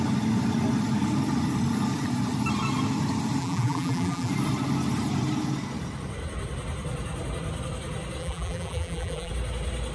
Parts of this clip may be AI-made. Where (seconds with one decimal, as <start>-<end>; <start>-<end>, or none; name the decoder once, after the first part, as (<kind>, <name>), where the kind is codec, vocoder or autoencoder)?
3.4-4.3 (vocoder, BigVGAN v2); 8.2-9.3